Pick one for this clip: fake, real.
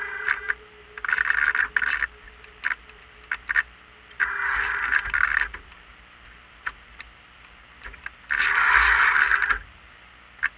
real